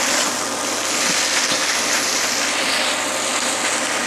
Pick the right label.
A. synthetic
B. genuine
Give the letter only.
B